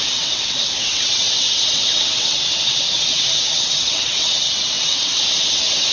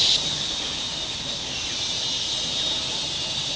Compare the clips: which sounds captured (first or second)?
second